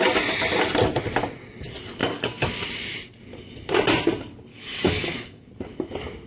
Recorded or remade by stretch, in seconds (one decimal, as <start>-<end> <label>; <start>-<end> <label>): 0.0-2.0 recorded; 2.0-2.5 remade; 2.5-4.5 recorded; 4.5-5.5 remade; 5.5-6.3 recorded